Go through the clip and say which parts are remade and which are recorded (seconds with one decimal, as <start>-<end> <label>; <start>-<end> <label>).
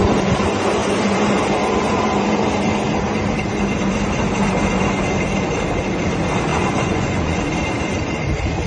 0.0-6.5 recorded; 6.5-7.4 remade; 7.4-8.7 recorded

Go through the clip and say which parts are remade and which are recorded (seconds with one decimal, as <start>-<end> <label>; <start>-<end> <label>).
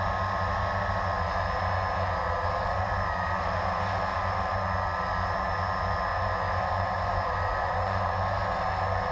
0.0-6.1 recorded; 6.1-8.1 remade; 8.1-9.1 recorded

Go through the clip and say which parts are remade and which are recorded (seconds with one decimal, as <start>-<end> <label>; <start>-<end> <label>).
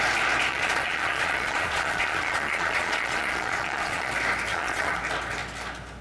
0.0-0.5 recorded; 0.5-4.1 remade; 4.1-4.5 recorded; 4.5-5.0 remade; 5.0-6.0 recorded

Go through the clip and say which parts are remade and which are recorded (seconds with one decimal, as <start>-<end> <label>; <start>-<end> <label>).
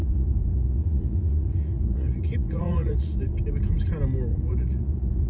0.0-3.2 remade; 3.2-4.3 recorded; 4.3-5.3 remade